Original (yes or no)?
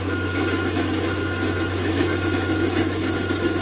no